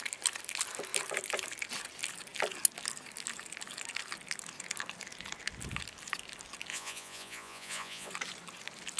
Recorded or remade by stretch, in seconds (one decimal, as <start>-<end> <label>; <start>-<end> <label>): 0.0-6.7 recorded; 6.7-8.1 remade; 8.1-9.0 recorded